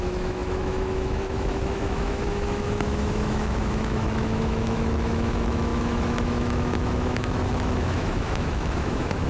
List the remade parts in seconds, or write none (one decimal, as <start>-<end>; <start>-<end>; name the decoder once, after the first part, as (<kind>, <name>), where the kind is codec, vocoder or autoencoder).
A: 0.0-9.3 (autoencoder, DAC-VAE)